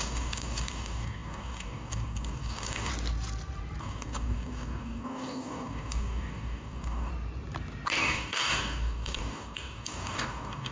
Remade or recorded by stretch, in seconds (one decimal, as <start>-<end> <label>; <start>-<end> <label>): 0.0-2.9 remade; 2.9-3.8 recorded; 3.8-7.1 remade; 7.1-8.0 recorded; 8.0-10.7 remade